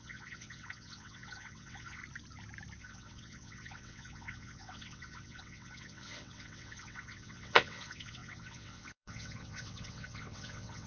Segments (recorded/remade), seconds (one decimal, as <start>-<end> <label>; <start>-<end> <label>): 0.0-2.0 remade; 2.0-2.8 recorded; 2.8-10.9 remade